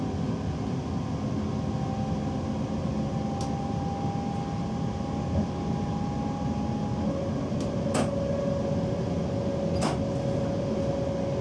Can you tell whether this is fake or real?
real